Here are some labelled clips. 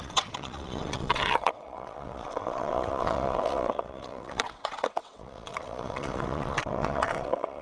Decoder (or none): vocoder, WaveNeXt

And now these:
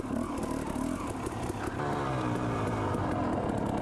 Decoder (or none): none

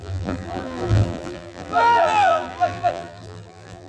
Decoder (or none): vocoder, BigVGAN v2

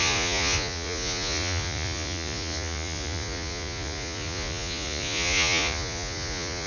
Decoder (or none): vocoder, Vocos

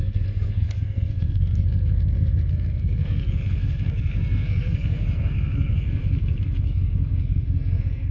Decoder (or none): codec, SNAC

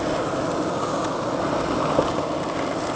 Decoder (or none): none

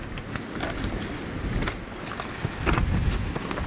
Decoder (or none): none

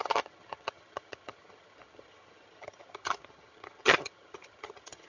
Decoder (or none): vocoder, HiFi-GAN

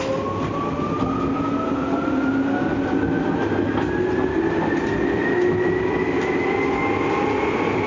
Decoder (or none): none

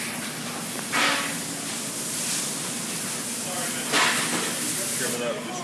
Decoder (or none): none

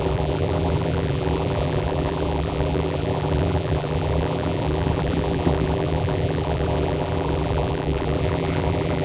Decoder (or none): vocoder, BigVGAN v2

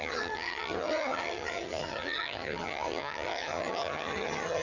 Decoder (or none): vocoder, HiFi-GAN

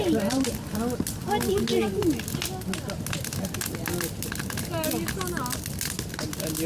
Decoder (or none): none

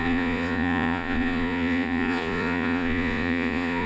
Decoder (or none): vocoder, Vocos